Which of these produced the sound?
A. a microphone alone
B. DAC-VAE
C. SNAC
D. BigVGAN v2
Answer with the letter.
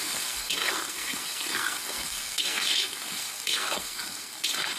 C